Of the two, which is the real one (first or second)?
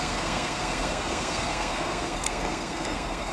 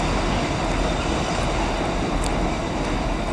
second